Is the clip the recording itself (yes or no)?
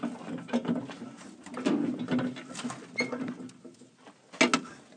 yes